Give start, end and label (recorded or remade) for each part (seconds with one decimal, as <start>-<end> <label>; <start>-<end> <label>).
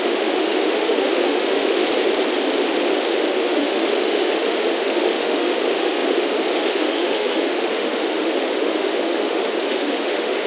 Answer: 0.0-1.8 remade; 1.8-2.9 recorded; 2.9-10.5 remade